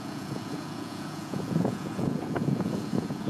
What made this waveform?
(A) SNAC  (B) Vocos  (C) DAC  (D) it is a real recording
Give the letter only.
B